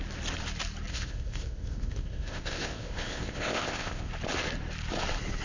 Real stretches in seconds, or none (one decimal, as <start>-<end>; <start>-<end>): 0.0-0.9; 4.1-5.4

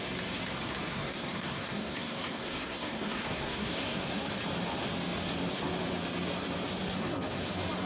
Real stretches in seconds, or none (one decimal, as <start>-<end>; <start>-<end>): 0.0-0.9; 4.2-7.0; 7.5-7.9

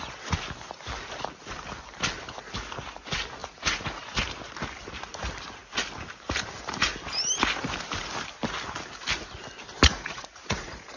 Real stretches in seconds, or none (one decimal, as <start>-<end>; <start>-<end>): 0.0-3.4; 4.2-9.9

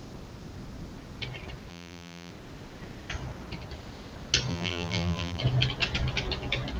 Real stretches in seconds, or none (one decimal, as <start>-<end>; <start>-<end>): 0.0-1.7; 2.3-4.5; 5.4-6.8

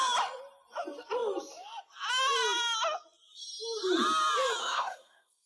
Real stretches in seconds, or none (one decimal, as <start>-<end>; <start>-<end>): 0.0-4.6

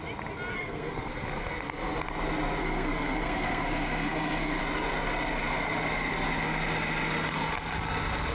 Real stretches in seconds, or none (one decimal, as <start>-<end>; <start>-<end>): 0.0-0.5; 1.1-2.6; 4.6-8.3